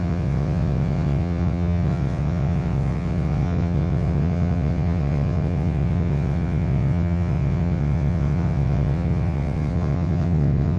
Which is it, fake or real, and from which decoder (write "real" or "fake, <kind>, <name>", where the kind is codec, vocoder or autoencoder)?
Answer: fake, vocoder, WaveNeXt